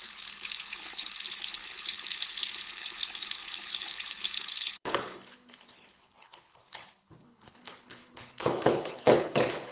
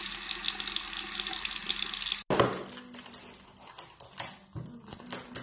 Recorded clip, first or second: second